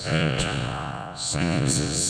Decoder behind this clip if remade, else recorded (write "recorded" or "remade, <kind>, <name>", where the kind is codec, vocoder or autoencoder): remade, vocoder, Vocos